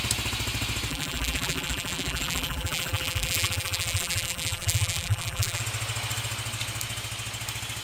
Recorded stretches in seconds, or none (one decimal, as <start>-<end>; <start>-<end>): 0.0-0.9; 5.6-7.8